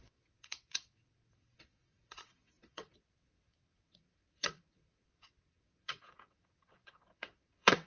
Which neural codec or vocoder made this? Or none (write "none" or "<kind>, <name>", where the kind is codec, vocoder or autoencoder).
vocoder, WaveNeXt